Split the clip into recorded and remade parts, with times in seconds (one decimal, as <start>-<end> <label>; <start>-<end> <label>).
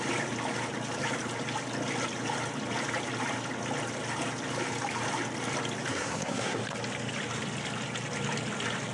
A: 0.0-5.9 recorded; 5.9-6.6 remade; 6.6-8.9 recorded